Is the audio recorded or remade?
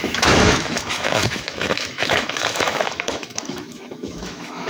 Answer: remade